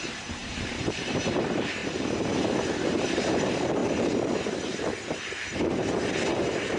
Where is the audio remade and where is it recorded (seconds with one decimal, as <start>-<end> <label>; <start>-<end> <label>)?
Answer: 0.0-1.8 remade; 1.8-3.0 recorded; 3.0-3.8 remade; 3.8-5.5 recorded; 5.5-6.8 remade